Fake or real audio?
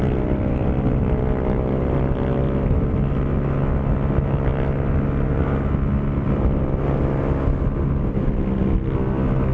real